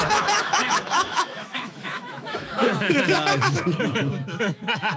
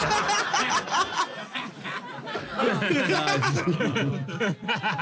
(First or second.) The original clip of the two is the second